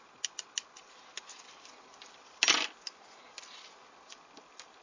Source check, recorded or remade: recorded